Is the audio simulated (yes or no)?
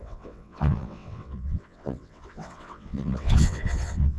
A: yes